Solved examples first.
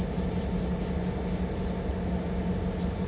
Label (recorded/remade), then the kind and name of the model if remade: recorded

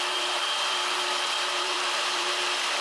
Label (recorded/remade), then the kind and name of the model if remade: remade, vocoder, BigVGAN v2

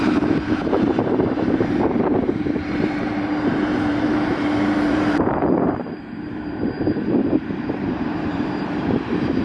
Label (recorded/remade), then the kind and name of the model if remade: remade, vocoder, BigVGAN v2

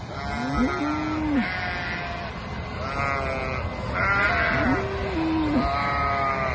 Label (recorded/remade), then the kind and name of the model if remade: recorded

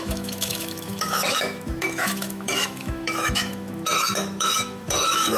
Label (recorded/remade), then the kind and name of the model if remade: remade, autoencoder, DAC-VAE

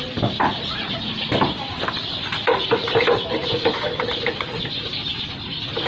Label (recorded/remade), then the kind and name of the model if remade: recorded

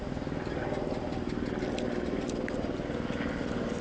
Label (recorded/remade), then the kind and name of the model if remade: recorded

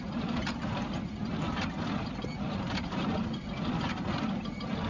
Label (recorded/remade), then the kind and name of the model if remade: remade, vocoder, BigVGAN v2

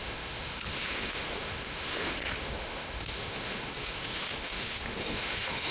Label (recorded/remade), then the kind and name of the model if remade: remade, autoencoder, DAC-VAE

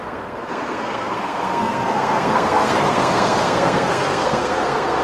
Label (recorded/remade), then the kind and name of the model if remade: remade, codec, SNAC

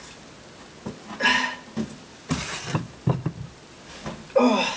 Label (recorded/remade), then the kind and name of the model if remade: recorded